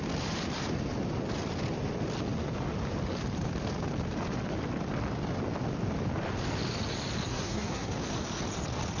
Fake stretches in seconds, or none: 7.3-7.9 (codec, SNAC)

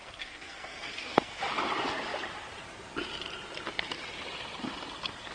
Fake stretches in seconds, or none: 0.0-1.4 (codec, SNAC)

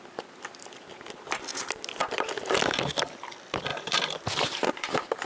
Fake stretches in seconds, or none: 3.7-5.3 (vocoder, BigVGAN v2)

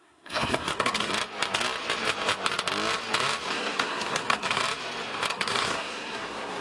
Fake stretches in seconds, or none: 0.0-1.1 (codec, SNAC); 3.5-4.6; 5.3-6.6

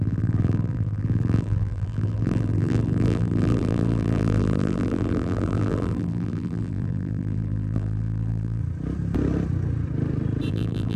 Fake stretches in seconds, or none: 0.0-8.6 (vocoder, BigVGAN v2); 10.5-11.0